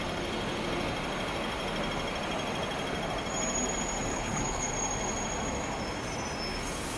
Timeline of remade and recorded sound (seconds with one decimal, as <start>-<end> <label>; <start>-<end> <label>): 0.0-4.1 recorded; 4.1-4.7 remade; 4.7-7.0 recorded